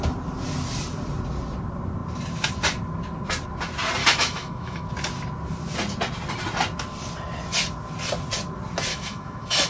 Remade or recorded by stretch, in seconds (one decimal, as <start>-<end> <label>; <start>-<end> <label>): 0.0-4.0 recorded; 4.0-4.9 remade; 4.9-8.9 recorded; 8.9-9.7 remade